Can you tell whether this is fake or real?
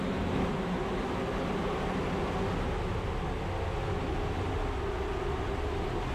real